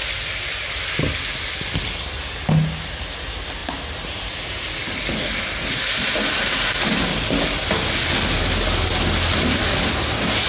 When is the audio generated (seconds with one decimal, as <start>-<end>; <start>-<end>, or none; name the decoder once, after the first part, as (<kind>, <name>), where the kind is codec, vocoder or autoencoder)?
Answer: none